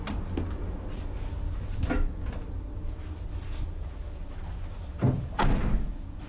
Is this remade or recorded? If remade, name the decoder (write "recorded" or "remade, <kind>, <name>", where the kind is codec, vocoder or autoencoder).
recorded